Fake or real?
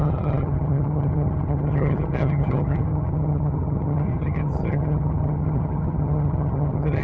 fake